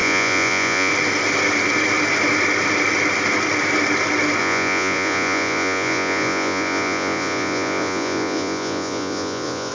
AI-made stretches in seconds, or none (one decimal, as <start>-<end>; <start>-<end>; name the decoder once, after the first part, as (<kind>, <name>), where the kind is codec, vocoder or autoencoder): 0.0-0.9 (vocoder, Vocos); 4.4-9.7